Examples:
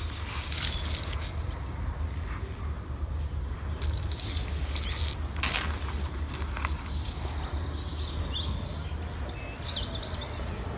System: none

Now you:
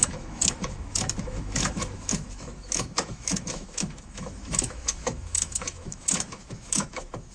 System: autoencoder, DAC-VAE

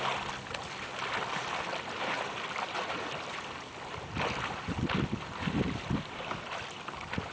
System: none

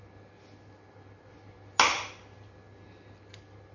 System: none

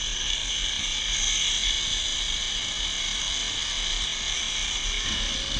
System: none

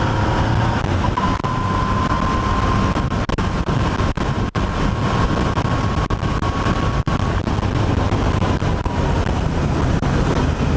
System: none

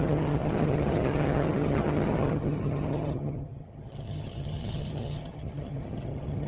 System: vocoder, HiFi-GAN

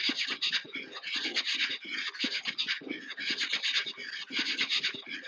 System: none